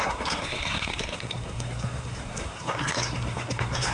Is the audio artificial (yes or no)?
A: yes